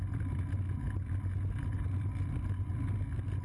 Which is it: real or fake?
real